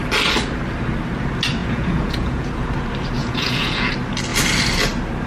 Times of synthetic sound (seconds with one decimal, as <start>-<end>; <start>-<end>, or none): 1.6-2.5; 3.2-3.9

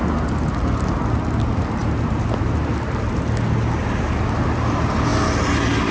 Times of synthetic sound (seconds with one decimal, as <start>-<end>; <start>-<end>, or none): none

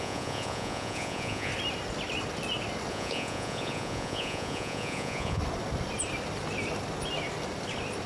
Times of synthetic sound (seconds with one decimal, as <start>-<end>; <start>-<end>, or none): 0.0-1.5; 2.9-5.4